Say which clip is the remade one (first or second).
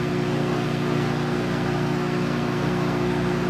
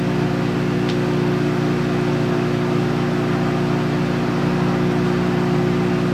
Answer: first